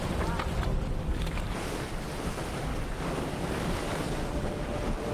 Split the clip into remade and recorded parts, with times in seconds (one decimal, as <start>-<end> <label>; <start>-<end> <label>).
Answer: 0.0-0.7 recorded; 0.7-2.0 remade; 2.0-2.7 recorded; 2.7-4.6 remade; 4.6-5.1 recorded